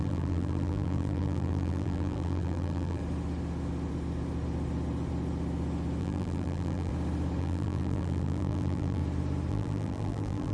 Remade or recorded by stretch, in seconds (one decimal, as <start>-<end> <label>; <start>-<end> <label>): 0.0-3.0 remade; 3.0-6.0 recorded; 6.0-6.9 remade; 6.9-7.4 recorded; 7.4-9.0 remade; 9.0-9.5 recorded; 9.5-10.5 remade